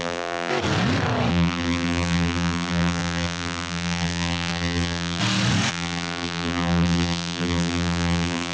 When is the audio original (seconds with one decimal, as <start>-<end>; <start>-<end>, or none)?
0.5-1.3; 5.2-5.7